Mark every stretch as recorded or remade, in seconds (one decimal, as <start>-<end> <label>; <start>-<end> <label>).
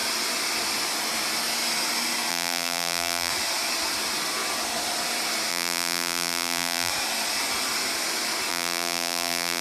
0.0-2.3 recorded; 2.3-3.3 remade; 3.3-5.5 recorded; 5.5-6.9 remade; 6.9-8.5 recorded; 8.5-9.6 remade